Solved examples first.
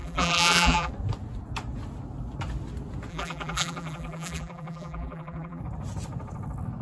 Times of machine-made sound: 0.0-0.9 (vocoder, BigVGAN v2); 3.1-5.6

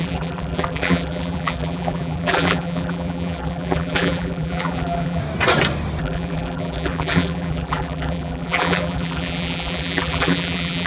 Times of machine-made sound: 0.0-5.2 (vocoder, BigVGAN v2); 6.0-10.9

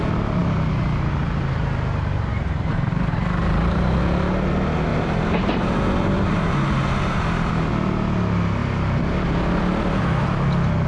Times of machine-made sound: 3.4-4.0 (vocoder, BigVGAN v2); 4.9-7.5

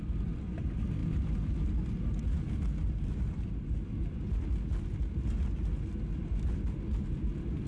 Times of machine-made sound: none

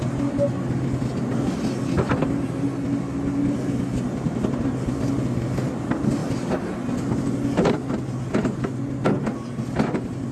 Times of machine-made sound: none